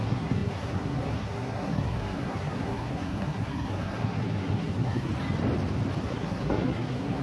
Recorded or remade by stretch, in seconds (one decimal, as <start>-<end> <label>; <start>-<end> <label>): 0.0-5.1 remade; 5.1-6.0 recorded; 6.0-7.2 remade